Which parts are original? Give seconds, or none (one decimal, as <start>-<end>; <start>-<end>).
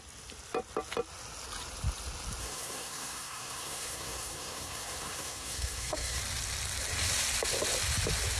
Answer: 0.0-2.4; 6.2-8.4